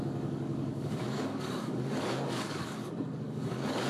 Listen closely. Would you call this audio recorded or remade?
remade